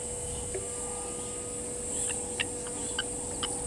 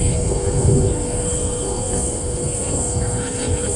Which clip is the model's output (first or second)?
second